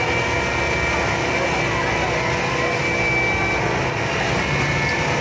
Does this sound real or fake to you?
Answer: real